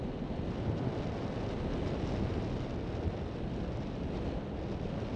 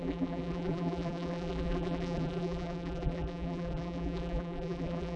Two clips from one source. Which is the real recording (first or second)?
first